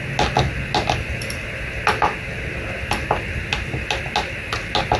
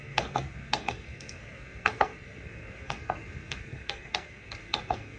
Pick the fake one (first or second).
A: second